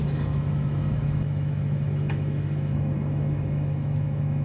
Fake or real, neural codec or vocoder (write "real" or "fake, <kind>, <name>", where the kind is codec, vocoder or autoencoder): fake, autoencoder, DAC-VAE